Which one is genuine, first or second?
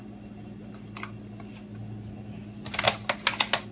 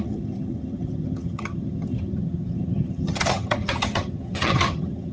first